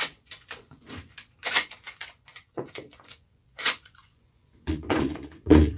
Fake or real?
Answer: fake